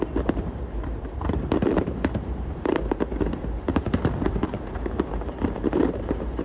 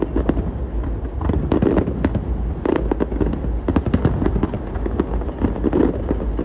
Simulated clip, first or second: first